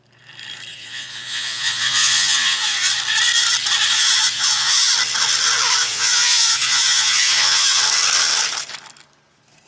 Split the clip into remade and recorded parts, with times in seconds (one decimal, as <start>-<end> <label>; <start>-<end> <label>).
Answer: 0.0-0.7 recorded; 0.7-2.9 remade; 2.9-3.9 recorded; 3.9-4.9 remade; 4.9-5.8 recorded; 5.8-7.8 remade; 7.8-9.7 recorded